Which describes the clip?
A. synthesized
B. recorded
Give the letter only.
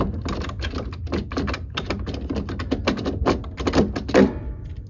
B